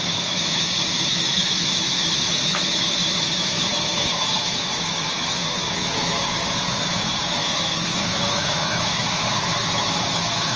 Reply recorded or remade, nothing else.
remade